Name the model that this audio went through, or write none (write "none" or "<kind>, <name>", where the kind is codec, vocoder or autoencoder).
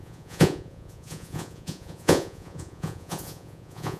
vocoder, Vocos